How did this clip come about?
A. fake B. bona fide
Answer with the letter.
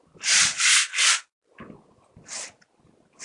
B